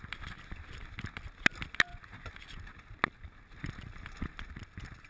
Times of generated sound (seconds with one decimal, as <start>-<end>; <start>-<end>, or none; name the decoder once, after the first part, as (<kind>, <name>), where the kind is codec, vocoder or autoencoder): none